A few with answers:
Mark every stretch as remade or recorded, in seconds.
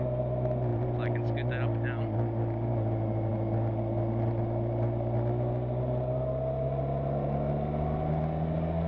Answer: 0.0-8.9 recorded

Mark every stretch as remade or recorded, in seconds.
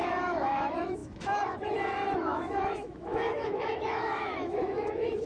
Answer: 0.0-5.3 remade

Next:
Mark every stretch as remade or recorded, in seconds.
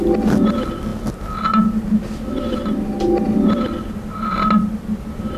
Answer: 0.0-5.4 recorded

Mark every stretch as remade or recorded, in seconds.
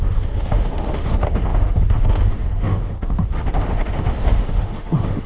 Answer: 0.0-5.3 remade